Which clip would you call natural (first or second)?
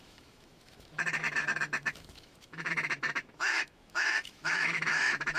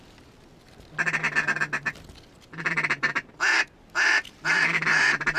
second